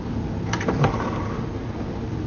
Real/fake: real